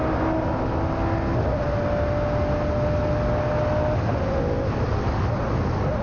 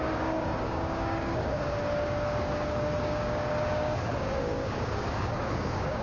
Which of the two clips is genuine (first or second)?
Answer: first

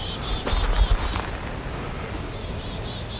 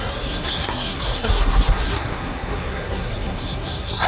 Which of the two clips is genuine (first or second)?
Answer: first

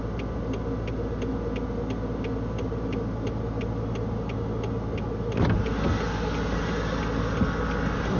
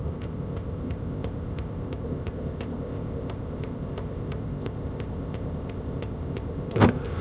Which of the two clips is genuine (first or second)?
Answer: first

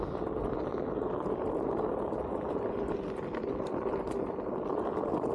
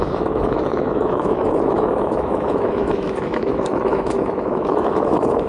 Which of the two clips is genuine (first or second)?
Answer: first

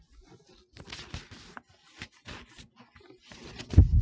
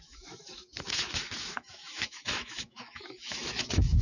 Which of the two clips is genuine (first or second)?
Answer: first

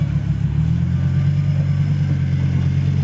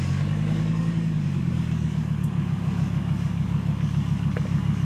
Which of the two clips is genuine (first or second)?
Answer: first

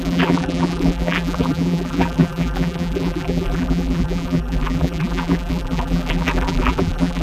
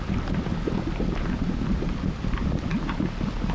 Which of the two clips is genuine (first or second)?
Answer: second